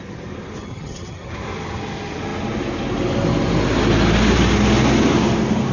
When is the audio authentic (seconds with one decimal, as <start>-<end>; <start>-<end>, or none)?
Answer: 0.0-0.6; 1.3-5.7